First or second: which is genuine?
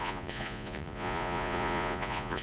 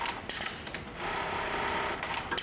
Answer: second